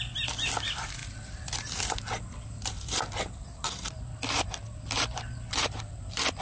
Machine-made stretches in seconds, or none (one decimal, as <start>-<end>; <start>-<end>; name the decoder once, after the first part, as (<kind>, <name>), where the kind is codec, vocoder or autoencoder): 0.0-6.4 (vocoder, BigVGAN v2)